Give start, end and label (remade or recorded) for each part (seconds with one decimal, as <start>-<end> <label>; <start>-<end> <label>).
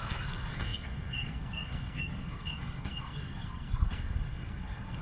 0.0-5.0 remade